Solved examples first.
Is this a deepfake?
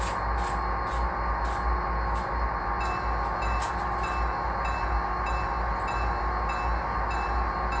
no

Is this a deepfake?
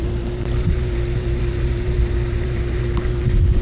yes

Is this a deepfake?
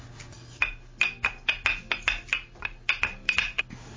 no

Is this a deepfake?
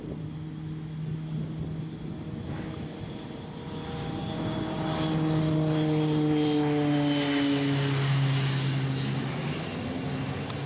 no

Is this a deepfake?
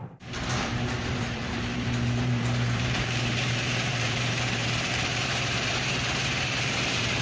yes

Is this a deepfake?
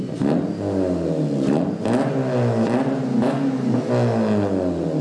no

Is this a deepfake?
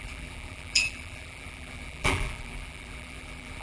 yes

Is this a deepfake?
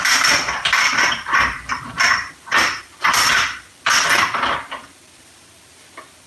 yes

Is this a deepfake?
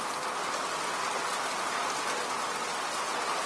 no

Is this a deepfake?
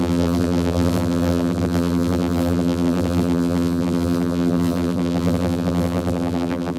yes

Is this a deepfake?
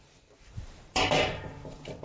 yes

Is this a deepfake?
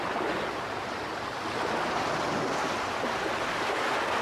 yes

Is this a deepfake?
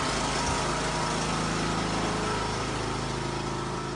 no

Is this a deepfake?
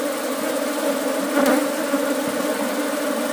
no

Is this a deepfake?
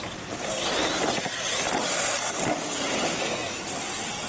no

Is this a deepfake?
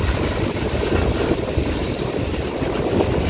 yes